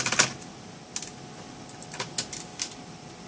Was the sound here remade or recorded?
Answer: recorded